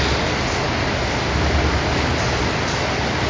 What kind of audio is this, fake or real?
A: real